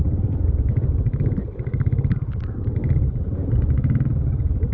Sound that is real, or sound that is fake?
real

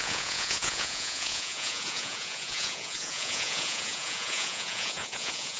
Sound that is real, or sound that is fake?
fake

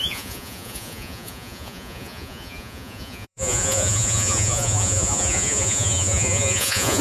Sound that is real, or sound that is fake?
fake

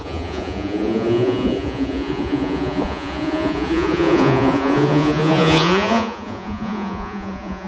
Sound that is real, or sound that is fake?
fake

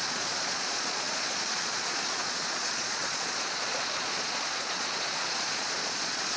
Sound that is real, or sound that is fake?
fake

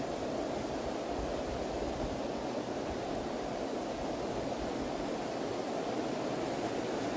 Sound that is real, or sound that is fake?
real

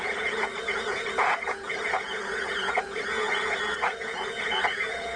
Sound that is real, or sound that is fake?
fake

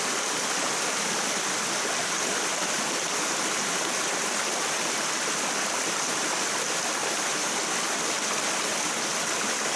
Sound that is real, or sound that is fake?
real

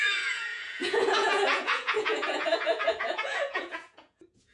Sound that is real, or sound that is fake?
fake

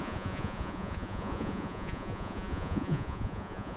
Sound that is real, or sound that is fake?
fake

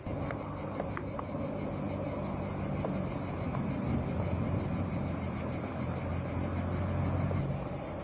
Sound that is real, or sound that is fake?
real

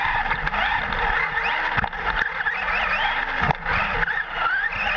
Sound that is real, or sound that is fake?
real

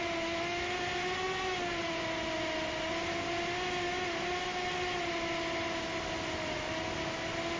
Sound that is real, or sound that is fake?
real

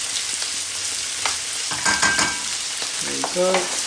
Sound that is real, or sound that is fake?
real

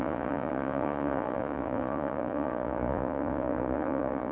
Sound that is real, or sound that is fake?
fake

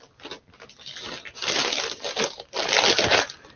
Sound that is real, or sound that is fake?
real